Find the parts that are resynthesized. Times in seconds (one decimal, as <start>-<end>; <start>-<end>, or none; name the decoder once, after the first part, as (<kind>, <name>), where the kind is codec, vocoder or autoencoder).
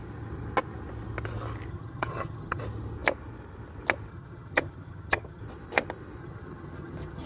1.7-2.6 (vocoder, HiFi-GAN); 4.1-5.4; 6.2-7.3